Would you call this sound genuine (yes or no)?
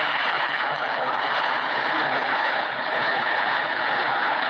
no